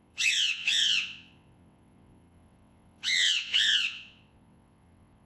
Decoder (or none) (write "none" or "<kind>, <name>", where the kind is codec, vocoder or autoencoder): vocoder, WaveNeXt